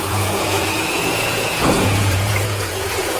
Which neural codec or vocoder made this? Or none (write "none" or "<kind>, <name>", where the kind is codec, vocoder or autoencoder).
vocoder, Vocos